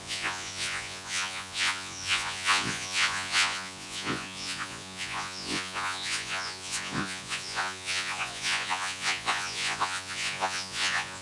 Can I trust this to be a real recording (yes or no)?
no